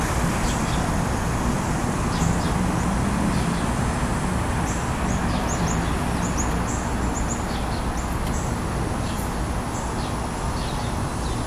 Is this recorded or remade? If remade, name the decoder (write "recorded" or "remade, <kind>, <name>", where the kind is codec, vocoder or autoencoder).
recorded